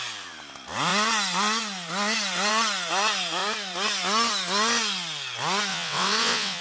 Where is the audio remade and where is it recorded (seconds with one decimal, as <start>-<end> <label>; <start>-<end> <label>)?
0.0-5.7 recorded; 5.7-6.6 remade